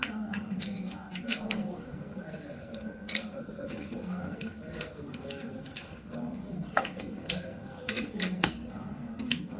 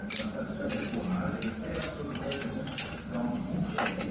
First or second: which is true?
second